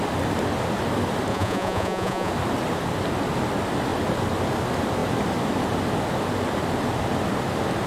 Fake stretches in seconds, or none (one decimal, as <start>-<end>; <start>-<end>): 1.3-2.3